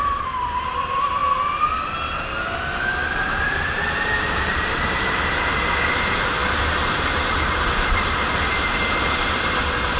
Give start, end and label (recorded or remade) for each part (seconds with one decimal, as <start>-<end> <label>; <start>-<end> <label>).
0.0-1.2 remade; 1.2-3.4 recorded; 3.4-10.0 remade